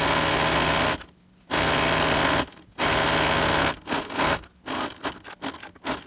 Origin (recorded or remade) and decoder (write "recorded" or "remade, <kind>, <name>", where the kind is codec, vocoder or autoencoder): recorded